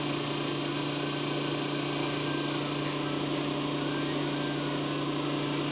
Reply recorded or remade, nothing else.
recorded